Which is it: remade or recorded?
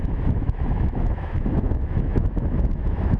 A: remade